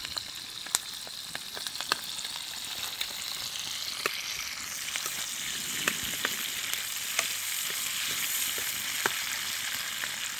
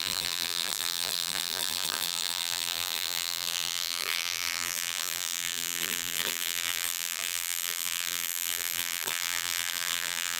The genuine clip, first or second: first